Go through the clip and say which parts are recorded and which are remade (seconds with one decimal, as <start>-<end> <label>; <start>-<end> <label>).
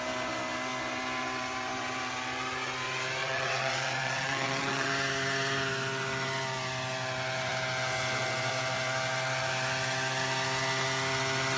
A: 0.0-3.2 recorded; 3.2-4.9 remade; 4.9-11.6 recorded